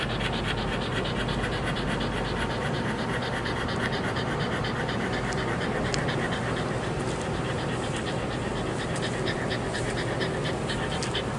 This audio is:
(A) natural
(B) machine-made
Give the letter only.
A